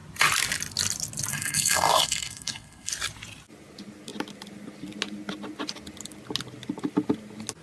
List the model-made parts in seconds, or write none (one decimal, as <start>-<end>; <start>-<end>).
1.3-2.9